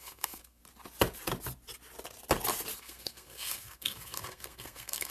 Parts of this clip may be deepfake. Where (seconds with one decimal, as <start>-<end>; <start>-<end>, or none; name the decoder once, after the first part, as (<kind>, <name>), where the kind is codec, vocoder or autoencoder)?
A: 0.0-0.6 (codec, SNAC); 2.8-5.1